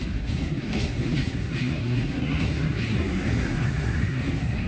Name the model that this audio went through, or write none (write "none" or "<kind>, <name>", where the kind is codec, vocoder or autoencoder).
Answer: codec, SNAC